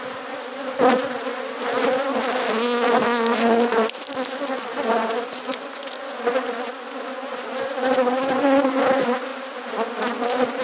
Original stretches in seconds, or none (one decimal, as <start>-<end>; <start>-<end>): 0.0-5.5; 8.7-10.6